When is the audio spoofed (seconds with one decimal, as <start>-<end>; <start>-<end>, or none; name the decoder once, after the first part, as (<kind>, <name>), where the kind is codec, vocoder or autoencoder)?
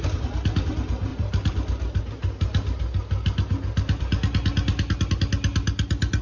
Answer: 1.1-2.0 (vocoder, BigVGAN v2)